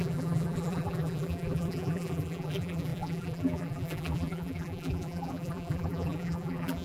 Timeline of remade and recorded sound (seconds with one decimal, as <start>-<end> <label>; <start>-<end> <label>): 0.0-6.8 remade